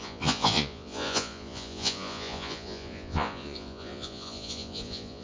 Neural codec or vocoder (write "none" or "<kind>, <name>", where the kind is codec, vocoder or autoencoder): vocoder, Vocos